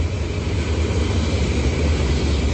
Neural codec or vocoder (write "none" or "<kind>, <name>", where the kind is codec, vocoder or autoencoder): none